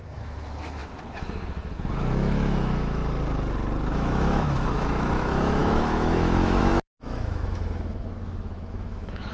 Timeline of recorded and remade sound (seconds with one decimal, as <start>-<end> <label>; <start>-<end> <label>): 0.0-3.0 remade; 3.0-3.9 recorded; 3.9-9.3 remade